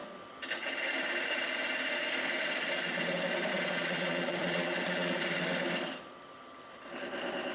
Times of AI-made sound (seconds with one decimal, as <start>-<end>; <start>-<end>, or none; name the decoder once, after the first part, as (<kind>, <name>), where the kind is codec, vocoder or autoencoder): 3.5-5.2 (vocoder, Vocos)